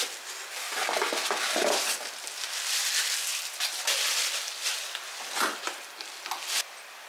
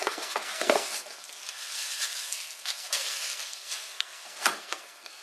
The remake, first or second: second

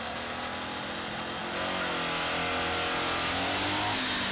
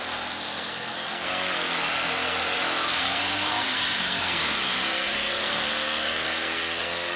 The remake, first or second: second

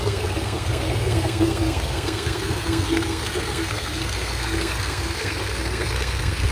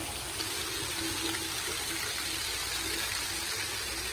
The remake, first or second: first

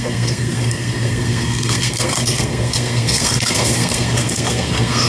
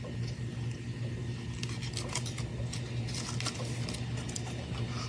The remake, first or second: first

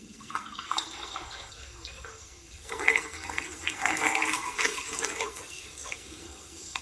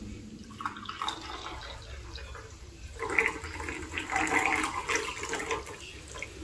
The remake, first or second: first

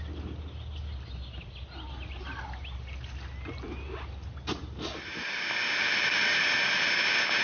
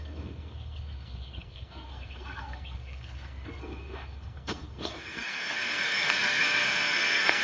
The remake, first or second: second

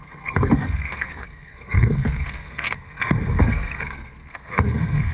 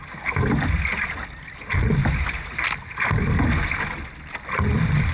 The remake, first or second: first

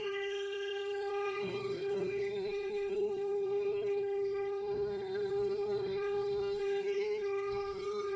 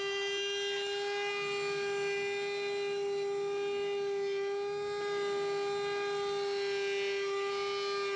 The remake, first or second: first